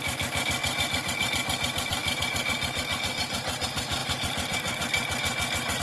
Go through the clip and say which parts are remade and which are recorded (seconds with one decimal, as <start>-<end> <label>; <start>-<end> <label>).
0.0-5.8 recorded